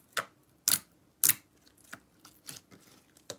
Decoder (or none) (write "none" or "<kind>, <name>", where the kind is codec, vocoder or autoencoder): none